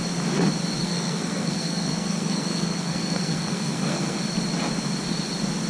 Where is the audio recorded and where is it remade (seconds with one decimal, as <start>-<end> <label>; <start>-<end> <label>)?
0.0-0.8 recorded; 0.8-4.2 remade; 4.2-5.7 recorded